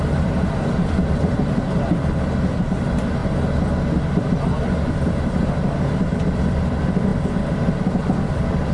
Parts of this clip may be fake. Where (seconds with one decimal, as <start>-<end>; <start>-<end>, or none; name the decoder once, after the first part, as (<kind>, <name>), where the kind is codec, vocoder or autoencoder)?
0.0-3.2 (vocoder, BigVGAN v2); 4.9-7.1; 8.0-8.7